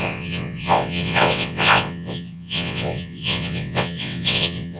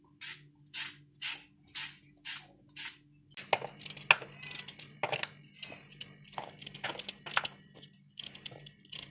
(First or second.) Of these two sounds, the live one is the second